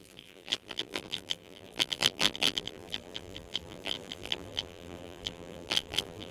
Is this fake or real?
fake